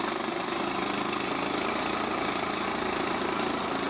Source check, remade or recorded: remade